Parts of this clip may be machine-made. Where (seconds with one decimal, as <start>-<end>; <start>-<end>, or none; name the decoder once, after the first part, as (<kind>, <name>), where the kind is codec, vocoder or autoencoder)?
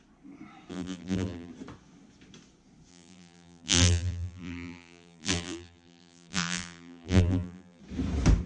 0.7-1.5 (vocoder, BigVGAN v2); 2.9-7.8